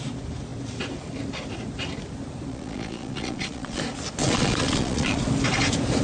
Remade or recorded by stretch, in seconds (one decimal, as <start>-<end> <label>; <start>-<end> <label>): 0.0-2.5 recorded; 2.5-3.8 remade; 3.8-4.2 recorded; 4.2-5.2 remade; 5.2-6.0 recorded